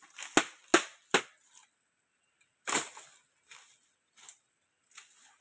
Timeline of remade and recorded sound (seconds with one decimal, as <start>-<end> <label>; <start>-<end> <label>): 0.0-5.4 recorded